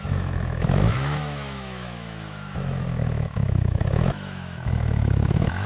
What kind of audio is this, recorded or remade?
remade